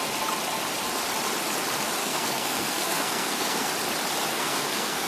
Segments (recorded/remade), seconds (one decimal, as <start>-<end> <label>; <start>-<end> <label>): 0.0-2.0 recorded; 2.0-3.7 remade; 3.7-4.3 recorded; 4.3-5.1 remade